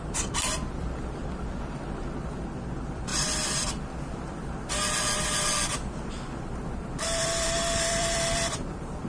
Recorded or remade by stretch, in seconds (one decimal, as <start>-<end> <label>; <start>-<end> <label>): 0.0-3.1 remade; 3.1-6.7 recorded; 6.7-9.1 remade

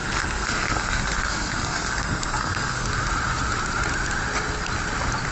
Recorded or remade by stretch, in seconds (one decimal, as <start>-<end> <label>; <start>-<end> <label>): 0.0-2.9 remade; 2.9-5.3 recorded

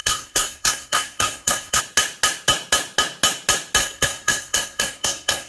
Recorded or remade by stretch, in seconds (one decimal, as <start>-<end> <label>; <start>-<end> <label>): 0.0-1.8 remade; 1.8-3.8 recorded; 3.8-5.5 remade

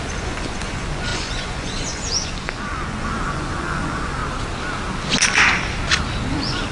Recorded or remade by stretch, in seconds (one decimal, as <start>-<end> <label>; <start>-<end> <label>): 0.0-4.2 remade; 4.2-6.3 recorded; 6.3-6.7 remade

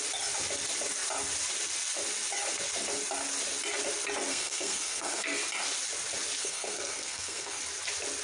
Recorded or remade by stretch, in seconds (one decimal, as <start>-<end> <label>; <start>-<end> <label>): 0.0-4.3 recorded; 4.3-5.4 remade; 5.4-6.4 recorded; 6.4-7.6 remade; 7.6-8.2 recorded

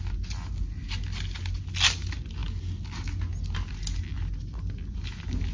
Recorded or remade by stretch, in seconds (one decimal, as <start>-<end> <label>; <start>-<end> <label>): 0.0-5.5 recorded

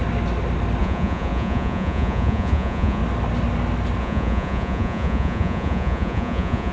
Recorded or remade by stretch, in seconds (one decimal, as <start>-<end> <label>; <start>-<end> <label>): 0.0-0.8 recorded; 0.8-3.0 remade; 3.0-4.0 recorded; 4.0-6.7 remade